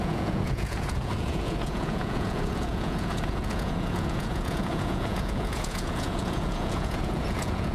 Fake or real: fake